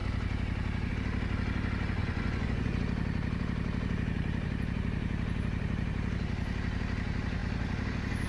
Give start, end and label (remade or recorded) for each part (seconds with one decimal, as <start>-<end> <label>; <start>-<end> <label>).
0.0-2.0 recorded; 2.0-2.8 remade; 2.8-8.3 recorded